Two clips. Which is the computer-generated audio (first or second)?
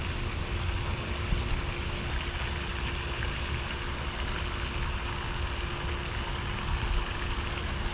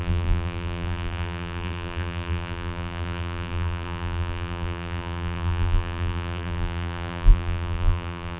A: second